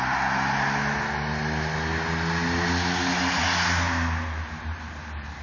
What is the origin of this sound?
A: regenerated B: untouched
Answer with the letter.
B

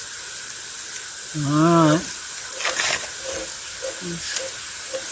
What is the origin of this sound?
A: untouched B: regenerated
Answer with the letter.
A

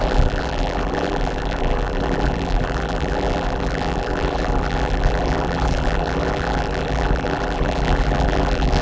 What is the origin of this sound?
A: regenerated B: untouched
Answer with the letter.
A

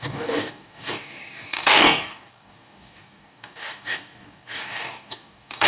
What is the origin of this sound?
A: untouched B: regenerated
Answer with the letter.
B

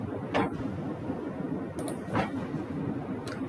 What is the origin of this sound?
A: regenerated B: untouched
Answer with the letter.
B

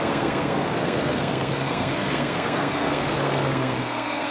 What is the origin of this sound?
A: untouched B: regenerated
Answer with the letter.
B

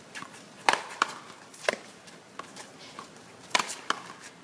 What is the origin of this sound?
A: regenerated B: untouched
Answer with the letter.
A